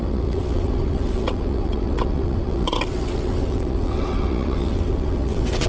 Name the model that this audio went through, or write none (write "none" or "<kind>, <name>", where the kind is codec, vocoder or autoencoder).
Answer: vocoder, WaveNeXt